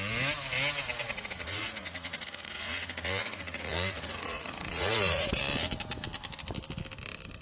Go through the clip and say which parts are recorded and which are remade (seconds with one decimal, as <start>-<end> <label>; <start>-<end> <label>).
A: 0.0-1.0 recorded; 1.0-5.4 remade; 5.4-7.4 recorded